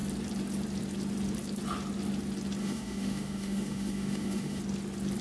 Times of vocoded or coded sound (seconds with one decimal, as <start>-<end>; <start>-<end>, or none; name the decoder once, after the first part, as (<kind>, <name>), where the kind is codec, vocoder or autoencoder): 2.6-4.6 (autoencoder, DAC-VAE)